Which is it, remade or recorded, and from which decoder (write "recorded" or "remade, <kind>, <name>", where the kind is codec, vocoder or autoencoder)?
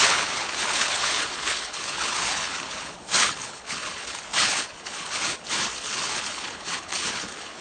remade, codec, HILCodec